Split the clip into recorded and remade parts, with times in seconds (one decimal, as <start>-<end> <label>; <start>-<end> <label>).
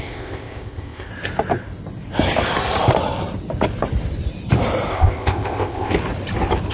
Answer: 0.0-1.1 remade; 1.1-4.9 recorded; 4.9-5.9 remade; 5.9-6.7 recorded